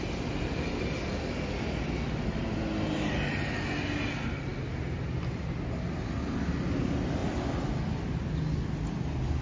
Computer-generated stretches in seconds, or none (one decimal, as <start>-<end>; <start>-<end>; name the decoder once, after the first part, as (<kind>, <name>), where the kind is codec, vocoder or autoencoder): none